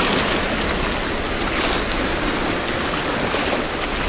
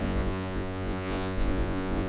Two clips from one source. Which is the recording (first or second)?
first